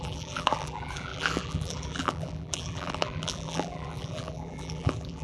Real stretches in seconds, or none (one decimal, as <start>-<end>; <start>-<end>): none